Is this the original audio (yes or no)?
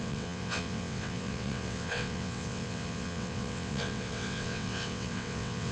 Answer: no